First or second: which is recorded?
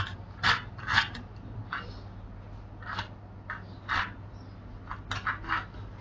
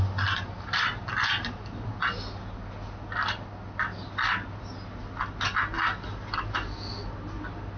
second